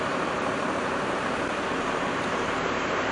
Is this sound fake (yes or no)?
yes